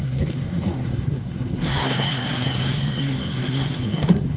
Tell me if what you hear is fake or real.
fake